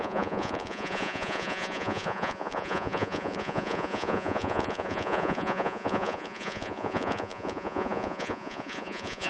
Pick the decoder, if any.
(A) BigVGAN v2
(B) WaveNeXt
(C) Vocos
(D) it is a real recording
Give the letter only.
C